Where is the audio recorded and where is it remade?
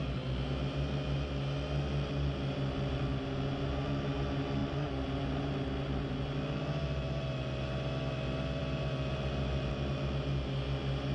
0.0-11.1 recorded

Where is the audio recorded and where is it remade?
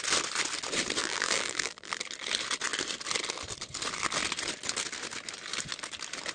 0.0-1.0 recorded; 1.0-2.0 remade; 2.0-6.3 recorded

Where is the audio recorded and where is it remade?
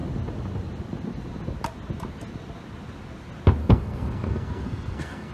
0.0-3.6 recorded; 3.6-5.3 remade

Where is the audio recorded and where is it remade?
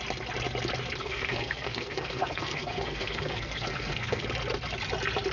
0.0-1.0 recorded; 1.0-4.2 remade; 4.2-5.3 recorded